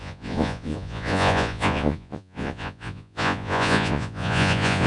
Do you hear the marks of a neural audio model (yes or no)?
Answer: yes